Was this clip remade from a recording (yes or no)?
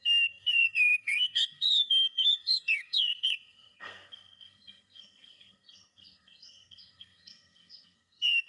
yes